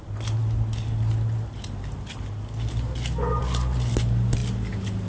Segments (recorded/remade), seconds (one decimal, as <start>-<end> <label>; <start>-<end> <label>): 0.0-5.1 recorded